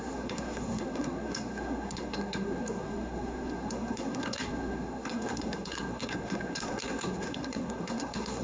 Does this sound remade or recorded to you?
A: remade